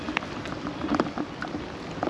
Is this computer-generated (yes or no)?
yes